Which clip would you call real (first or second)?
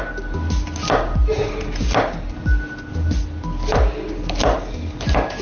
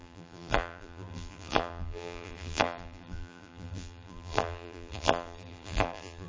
first